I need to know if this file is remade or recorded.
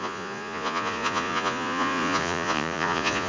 remade